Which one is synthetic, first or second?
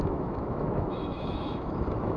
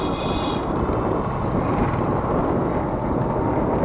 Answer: first